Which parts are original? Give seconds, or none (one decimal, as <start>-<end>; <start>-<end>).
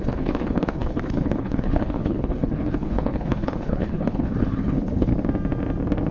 5.1-6.1